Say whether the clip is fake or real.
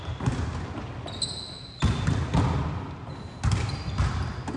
real